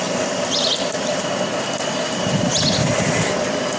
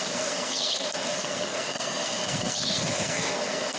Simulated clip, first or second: second